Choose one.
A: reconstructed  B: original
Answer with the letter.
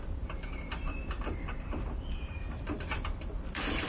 B